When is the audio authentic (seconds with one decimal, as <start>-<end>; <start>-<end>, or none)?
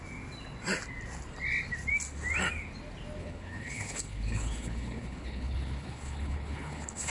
0.0-3.2